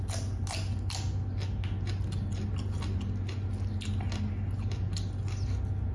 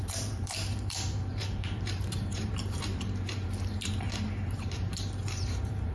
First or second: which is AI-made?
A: second